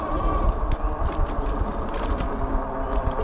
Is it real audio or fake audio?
real